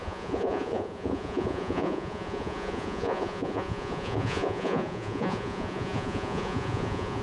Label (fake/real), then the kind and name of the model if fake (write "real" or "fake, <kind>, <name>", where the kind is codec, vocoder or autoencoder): fake, vocoder, Vocos